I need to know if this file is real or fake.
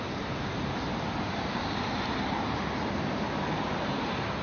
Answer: fake